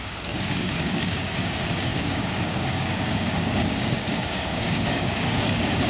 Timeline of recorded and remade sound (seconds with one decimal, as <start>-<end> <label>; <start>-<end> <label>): 0.0-5.9 remade